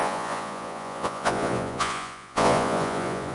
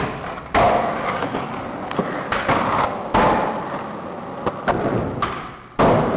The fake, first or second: first